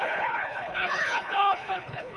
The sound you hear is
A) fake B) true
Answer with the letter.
A